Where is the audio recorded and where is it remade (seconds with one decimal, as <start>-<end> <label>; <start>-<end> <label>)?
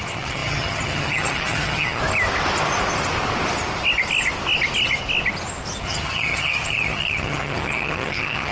0.0-2.0 remade; 2.0-5.8 recorded; 5.8-8.5 remade